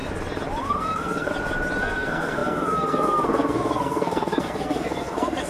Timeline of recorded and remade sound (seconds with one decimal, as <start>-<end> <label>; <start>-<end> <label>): 0.0-0.6 recorded; 0.6-1.3 remade; 1.3-1.8 recorded; 1.8-5.5 remade